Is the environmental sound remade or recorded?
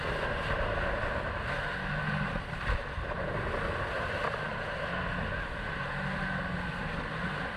recorded